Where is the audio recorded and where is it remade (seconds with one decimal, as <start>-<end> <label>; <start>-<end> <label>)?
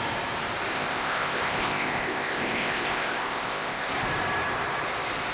0.0-0.7 recorded; 0.7-3.9 remade; 3.9-5.3 recorded